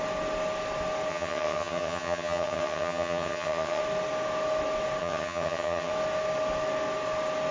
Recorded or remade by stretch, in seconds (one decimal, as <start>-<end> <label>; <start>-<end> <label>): 0.0-1.1 recorded; 1.1-3.8 remade; 3.8-5.0 recorded; 5.0-5.9 remade; 5.9-7.5 recorded